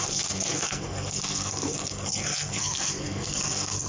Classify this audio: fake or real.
fake